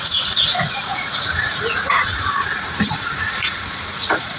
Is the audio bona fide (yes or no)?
no